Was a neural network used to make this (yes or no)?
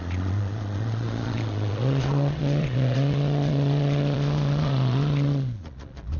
yes